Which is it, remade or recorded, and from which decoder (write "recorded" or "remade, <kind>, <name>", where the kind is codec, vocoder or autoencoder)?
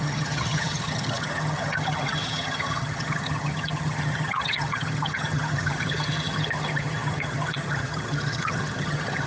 remade, vocoder, HiFi-GAN